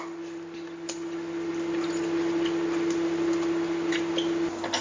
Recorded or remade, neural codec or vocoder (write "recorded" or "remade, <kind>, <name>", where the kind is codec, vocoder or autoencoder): recorded